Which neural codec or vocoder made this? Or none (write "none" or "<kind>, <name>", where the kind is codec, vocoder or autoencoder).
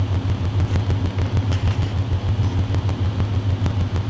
none